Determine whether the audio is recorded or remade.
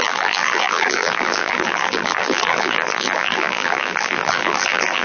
remade